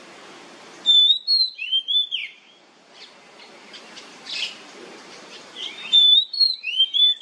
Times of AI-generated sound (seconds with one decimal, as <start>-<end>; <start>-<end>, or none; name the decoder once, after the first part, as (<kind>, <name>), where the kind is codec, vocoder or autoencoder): 2.2-6.5 (vocoder, BigVGAN v2)